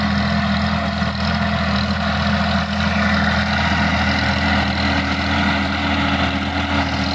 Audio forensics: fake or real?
real